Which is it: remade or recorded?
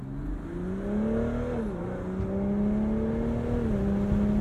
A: recorded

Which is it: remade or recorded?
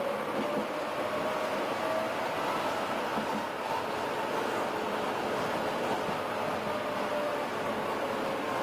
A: recorded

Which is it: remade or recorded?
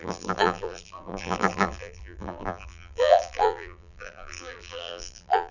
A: remade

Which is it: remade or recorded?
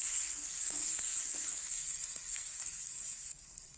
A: remade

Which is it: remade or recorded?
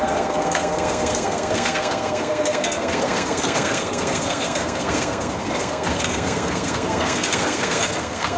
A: remade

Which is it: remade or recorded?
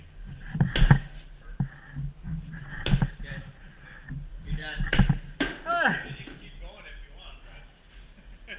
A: recorded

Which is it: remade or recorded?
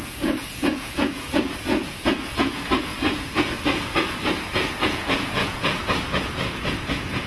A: remade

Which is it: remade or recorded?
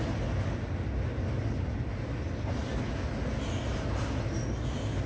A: recorded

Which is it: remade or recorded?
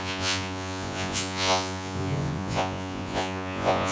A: remade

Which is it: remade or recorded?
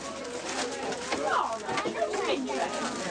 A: recorded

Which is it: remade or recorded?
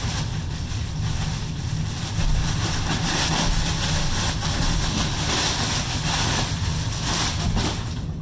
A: recorded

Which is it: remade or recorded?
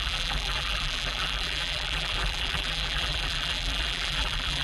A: remade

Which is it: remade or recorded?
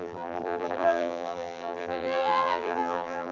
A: remade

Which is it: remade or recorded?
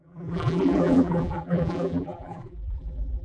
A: remade